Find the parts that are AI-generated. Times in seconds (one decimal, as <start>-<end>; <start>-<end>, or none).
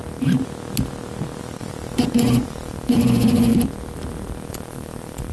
1.4-3.5; 4.5-5.3